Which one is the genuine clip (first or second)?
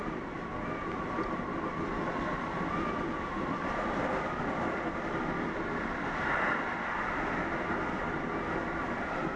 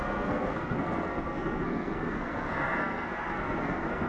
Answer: first